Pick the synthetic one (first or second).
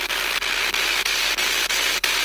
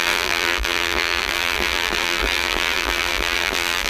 second